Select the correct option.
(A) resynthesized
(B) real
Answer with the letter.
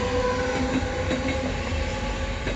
B